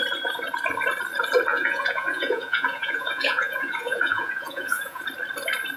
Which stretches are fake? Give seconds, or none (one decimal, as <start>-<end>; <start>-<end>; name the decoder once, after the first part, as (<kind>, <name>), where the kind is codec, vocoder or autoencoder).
1.5-5.0 (vocoder, Vocos)